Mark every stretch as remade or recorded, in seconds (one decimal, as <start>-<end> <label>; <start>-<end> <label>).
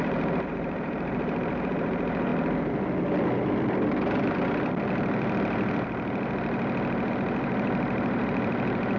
0.0-2.3 remade; 2.3-7.1 recorded; 7.1-9.0 remade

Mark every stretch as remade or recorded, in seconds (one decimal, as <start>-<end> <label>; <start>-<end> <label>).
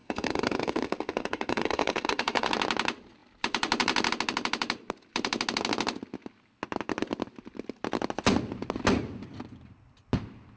0.0-2.5 remade; 2.5-10.6 recorded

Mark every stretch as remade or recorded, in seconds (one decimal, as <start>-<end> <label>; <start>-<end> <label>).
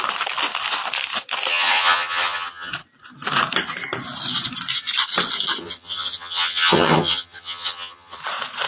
0.0-1.5 recorded; 1.5-2.7 remade; 2.7-5.6 recorded; 5.6-8.2 remade; 8.2-8.7 recorded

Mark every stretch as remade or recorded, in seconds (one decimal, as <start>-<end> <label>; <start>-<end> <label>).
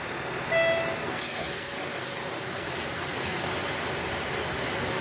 0.0-1.0 recorded; 1.0-3.5 remade; 3.5-5.0 recorded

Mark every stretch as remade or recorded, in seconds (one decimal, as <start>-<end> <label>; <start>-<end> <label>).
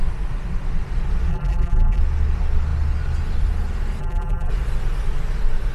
0.0-1.3 recorded; 1.3-2.0 remade; 2.0-4.0 recorded; 4.0-4.5 remade; 4.5-5.7 recorded